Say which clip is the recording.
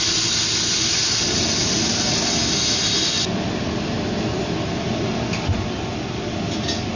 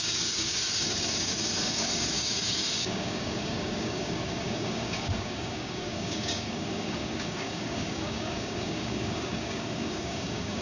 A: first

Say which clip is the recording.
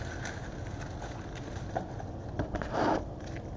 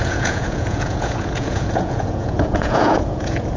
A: first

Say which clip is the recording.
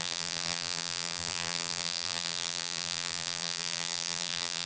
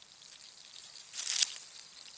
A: second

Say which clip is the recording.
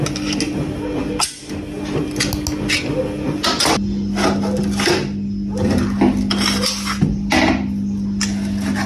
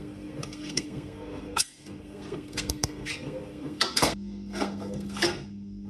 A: first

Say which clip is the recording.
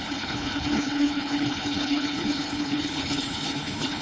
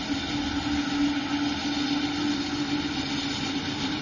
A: second